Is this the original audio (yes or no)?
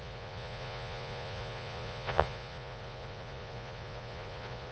no